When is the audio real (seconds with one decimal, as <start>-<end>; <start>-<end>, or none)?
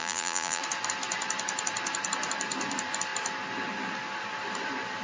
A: 0.6-5.0